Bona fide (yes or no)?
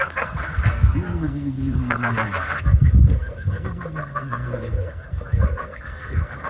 no